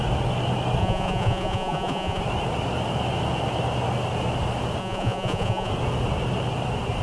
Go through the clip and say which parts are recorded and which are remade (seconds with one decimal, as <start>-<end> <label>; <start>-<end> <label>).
0.0-0.8 recorded; 0.8-2.2 remade; 2.2-4.8 recorded; 4.8-5.7 remade; 5.7-7.0 recorded